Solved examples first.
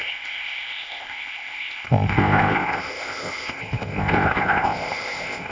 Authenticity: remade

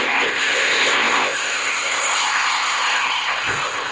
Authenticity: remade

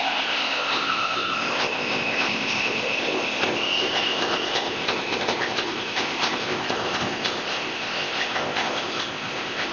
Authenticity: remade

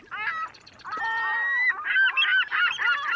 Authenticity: recorded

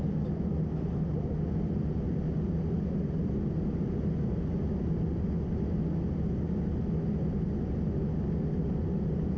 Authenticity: recorded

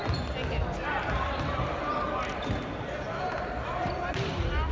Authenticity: recorded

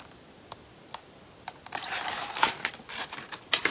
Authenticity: recorded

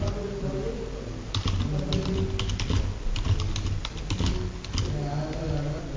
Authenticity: recorded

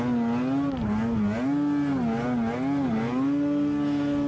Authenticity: recorded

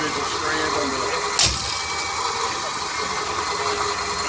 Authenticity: recorded